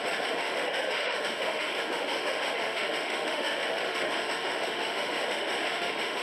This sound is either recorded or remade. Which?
remade